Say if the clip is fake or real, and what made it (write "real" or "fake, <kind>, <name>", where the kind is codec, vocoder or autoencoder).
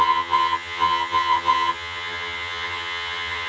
fake, vocoder, HiFi-GAN